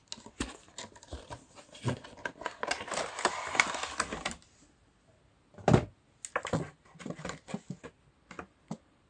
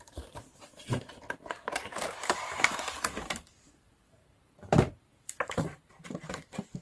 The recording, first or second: first